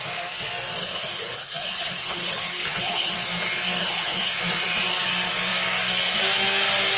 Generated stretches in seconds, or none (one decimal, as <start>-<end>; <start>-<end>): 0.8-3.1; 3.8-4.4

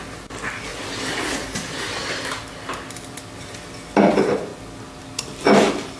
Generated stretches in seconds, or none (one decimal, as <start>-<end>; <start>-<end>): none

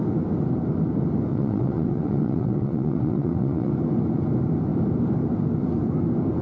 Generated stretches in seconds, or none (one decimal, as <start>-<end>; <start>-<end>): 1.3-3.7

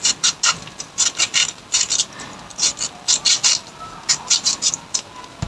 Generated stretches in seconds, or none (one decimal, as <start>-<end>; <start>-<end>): none

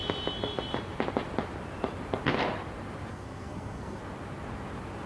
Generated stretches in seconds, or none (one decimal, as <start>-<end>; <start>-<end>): 3.1-4.0

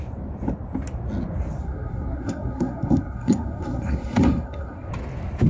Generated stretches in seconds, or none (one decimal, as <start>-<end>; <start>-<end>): 1.6-4.9

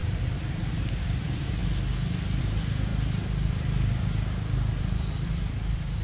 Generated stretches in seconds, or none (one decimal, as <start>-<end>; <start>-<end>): 0.0-1.6; 2.4-2.9; 4.8-6.0

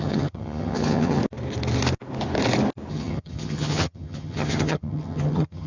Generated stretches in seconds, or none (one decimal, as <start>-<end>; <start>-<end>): 0.0-1.2; 2.9-5.7